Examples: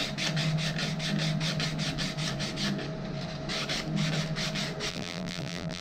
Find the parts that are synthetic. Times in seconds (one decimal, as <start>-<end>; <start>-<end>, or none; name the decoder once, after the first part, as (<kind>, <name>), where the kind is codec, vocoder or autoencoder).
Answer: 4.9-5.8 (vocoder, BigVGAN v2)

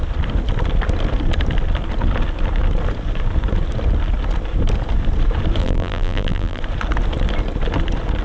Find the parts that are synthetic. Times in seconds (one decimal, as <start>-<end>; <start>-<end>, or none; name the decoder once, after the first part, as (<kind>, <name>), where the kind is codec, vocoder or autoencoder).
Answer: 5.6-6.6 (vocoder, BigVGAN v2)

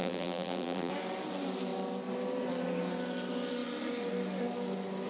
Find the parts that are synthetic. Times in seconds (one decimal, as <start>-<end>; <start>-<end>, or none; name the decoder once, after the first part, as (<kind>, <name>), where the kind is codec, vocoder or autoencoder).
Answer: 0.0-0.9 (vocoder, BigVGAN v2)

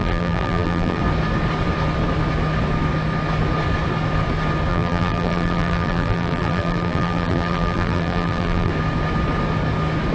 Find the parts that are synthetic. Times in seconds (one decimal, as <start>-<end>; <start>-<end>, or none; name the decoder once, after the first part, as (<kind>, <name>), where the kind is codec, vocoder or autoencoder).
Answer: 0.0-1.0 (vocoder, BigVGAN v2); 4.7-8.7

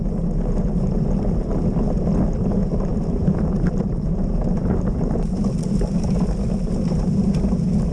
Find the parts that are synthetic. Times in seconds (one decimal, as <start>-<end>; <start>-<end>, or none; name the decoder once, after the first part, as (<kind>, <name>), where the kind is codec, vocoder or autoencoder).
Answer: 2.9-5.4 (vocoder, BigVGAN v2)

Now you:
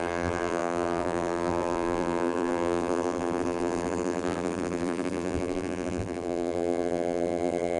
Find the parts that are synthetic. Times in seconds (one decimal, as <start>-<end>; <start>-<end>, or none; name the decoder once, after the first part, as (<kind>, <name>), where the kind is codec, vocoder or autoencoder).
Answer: 0.0-7.8 (vocoder, BigVGAN v2)

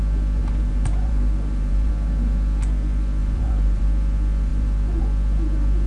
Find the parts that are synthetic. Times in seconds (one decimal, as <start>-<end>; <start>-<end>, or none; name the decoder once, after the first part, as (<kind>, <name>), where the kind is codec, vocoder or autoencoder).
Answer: 0.4-1.9 (vocoder, BigVGAN v2); 3.2-3.8; 4.5-5.0

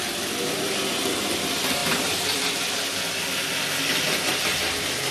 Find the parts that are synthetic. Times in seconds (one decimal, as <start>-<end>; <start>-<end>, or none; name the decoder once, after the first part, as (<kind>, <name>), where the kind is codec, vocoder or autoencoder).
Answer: 1.8-2.7 (vocoder, BigVGAN v2)